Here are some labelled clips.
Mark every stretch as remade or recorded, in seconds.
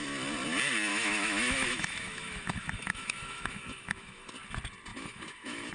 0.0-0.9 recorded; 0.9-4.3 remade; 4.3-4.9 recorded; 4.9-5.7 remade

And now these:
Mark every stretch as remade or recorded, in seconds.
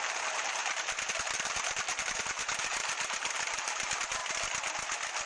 0.0-4.2 remade; 4.2-5.3 recorded